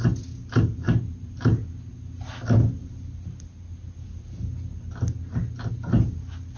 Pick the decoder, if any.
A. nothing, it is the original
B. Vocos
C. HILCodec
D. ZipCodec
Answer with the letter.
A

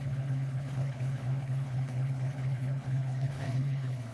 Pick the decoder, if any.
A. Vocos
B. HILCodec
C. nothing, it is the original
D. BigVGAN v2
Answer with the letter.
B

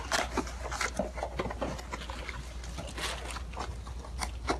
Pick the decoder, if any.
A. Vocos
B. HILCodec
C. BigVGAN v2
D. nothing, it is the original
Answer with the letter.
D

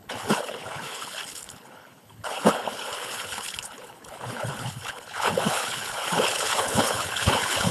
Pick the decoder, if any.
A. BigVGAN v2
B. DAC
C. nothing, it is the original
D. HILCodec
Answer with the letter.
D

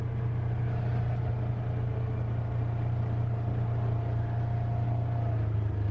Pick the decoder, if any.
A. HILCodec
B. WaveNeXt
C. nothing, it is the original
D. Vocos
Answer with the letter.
C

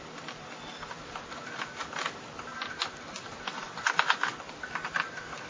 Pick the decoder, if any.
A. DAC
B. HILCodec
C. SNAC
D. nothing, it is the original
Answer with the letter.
D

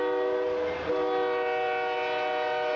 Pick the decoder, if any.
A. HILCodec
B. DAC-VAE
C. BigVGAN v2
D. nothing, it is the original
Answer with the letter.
D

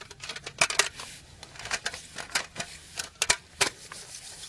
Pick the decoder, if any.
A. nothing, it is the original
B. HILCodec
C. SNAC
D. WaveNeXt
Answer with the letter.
A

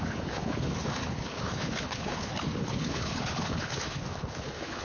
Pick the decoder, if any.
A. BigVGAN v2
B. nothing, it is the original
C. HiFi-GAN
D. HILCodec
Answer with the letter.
D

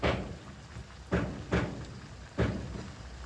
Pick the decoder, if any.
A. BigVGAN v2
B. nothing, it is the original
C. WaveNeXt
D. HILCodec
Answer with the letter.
B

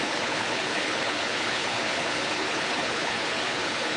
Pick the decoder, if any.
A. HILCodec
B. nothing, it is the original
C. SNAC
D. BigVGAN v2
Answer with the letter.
A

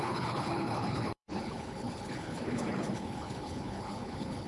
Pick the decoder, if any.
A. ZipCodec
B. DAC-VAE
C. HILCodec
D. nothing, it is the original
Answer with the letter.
C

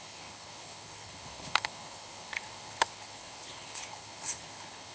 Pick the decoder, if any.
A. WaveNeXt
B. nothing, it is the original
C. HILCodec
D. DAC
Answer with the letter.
C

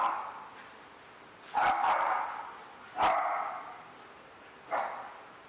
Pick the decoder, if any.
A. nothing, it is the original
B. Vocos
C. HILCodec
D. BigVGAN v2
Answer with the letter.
A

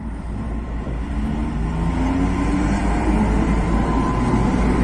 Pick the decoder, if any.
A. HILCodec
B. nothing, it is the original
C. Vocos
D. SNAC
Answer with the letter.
B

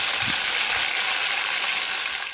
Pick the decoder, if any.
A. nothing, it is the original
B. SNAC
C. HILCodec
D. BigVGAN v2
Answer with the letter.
A